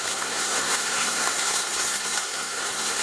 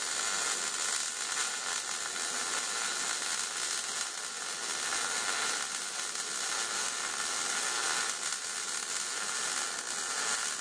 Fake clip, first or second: first